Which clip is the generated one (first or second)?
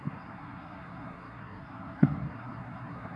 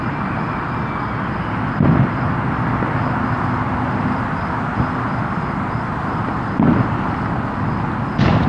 first